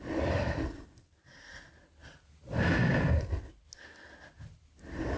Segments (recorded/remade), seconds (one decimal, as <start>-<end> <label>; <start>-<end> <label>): 0.0-5.2 recorded